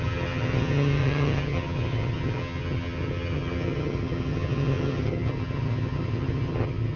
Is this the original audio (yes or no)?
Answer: no